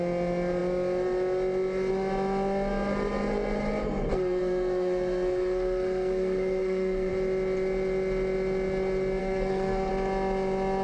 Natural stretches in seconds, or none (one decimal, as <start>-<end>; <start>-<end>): 0.0-4.1; 7.1-9.2; 9.9-10.8